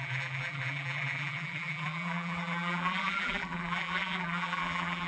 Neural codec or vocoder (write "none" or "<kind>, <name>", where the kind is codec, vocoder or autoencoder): vocoder, BigVGAN v2